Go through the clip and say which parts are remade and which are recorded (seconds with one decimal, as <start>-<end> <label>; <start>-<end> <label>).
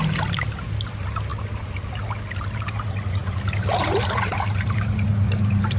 0.0-3.2 recorded; 3.2-5.8 remade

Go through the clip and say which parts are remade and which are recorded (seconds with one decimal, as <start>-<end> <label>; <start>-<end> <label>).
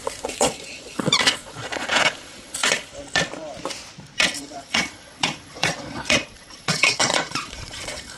0.0-2.9 remade; 2.9-4.4 recorded; 4.4-8.2 remade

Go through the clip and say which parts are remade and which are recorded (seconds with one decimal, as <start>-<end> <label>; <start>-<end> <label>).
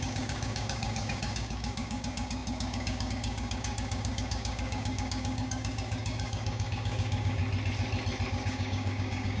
0.0-7.4 remade; 7.4-8.3 recorded; 8.3-9.4 remade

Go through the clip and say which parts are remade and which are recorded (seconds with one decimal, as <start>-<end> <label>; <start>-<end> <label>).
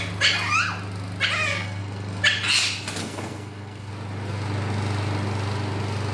0.0-1.5 recorded; 1.5-2.2 remade; 2.2-3.0 recorded; 3.0-3.9 remade; 3.9-6.1 recorded